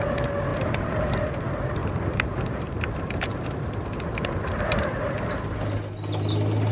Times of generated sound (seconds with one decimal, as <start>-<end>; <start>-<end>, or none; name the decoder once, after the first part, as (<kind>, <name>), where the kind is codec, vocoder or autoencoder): 0.5-1.1 (vocoder, BigVGAN v2); 1.8-4.6

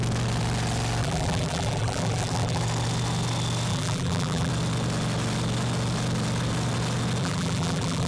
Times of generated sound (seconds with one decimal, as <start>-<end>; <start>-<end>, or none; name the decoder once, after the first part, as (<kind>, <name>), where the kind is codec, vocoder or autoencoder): 1.0-2.6 (vocoder, BigVGAN v2); 3.7-4.5; 7.2-8.1